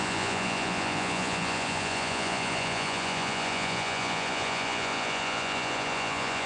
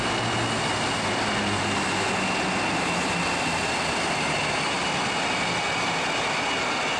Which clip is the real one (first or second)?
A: second